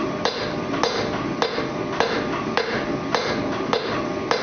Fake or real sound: real